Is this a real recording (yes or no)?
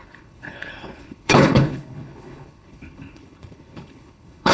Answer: no